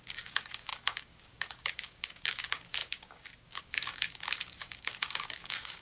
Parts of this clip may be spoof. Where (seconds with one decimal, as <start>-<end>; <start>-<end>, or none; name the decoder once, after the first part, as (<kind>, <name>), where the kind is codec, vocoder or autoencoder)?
0.0-5.8 (codec, DAC)